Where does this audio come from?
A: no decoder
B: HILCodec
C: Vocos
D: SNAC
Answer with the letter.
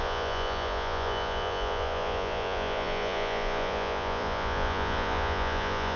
C